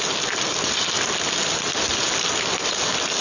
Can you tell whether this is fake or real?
real